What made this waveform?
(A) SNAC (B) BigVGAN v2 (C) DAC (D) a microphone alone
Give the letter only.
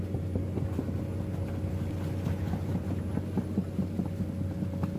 D